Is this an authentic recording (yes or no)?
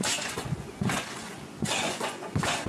no